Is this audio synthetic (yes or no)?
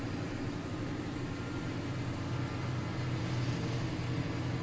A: no